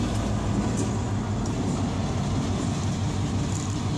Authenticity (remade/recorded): recorded